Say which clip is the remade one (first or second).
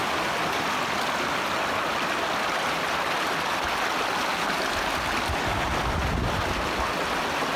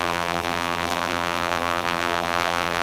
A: second